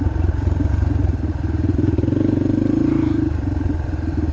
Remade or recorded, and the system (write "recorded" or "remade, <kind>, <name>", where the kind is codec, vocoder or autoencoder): remade, vocoder, BigVGAN v2